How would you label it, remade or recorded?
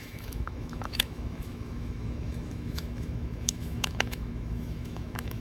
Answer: remade